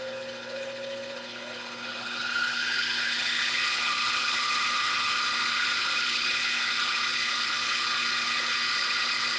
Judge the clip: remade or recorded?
remade